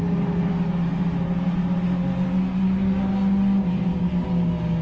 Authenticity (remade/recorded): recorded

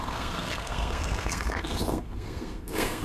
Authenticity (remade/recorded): remade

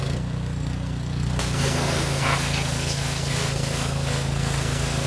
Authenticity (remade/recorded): remade